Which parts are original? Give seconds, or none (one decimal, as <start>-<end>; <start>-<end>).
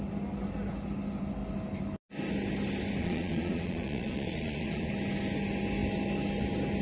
0.0-3.0; 4.9-6.8